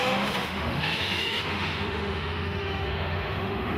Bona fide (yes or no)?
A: no